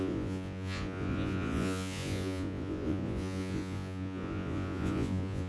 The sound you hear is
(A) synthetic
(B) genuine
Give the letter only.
A